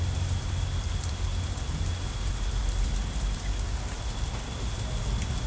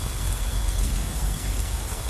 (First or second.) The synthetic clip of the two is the second